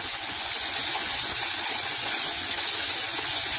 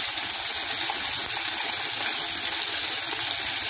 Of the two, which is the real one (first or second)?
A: second